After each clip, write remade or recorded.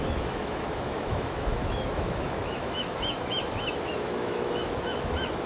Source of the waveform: remade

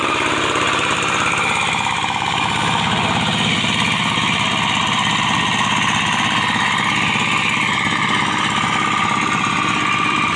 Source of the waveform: recorded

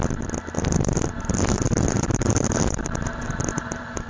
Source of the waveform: recorded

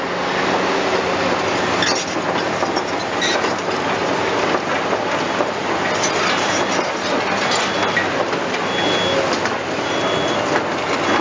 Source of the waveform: recorded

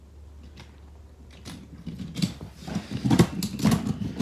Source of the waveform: recorded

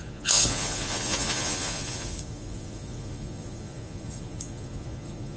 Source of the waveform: remade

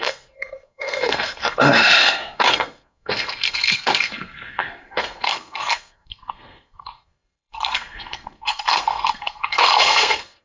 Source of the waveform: remade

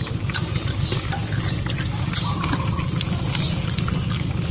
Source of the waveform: recorded